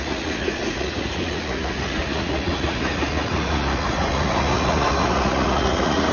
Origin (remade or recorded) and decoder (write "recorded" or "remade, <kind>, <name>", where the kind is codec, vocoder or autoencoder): remade, vocoder, Vocos